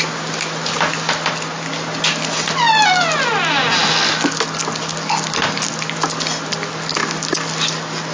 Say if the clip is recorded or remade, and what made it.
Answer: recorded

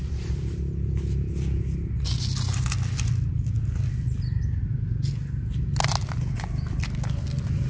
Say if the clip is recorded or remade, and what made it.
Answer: recorded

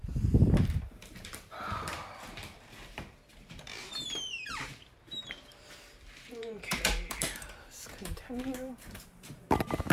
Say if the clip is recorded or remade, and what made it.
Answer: remade, vocoder, BigVGAN v2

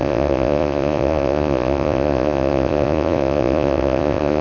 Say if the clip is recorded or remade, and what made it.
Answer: remade, vocoder, Vocos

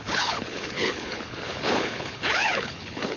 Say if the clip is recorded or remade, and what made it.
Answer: remade, codec, HILCodec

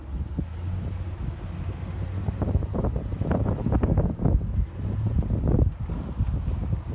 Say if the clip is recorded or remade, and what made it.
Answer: recorded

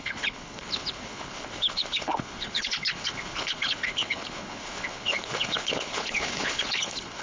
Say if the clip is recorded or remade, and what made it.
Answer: remade, codec, HILCodec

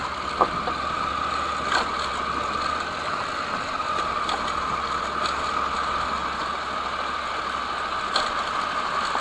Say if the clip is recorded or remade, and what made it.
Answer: recorded